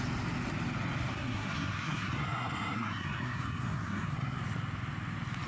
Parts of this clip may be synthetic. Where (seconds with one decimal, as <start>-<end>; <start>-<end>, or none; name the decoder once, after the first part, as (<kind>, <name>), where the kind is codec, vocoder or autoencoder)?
1.1-4.4 (codec, SNAC)